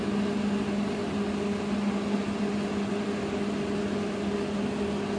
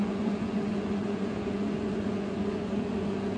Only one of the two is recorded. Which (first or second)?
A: first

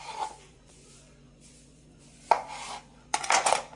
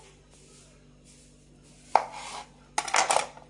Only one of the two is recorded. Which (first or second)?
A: second